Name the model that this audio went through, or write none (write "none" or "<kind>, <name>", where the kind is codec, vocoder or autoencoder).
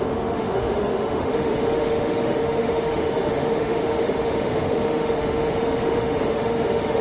autoencoder, DAC-VAE